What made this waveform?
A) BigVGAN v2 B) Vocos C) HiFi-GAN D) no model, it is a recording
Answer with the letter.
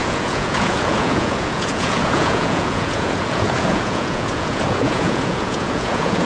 B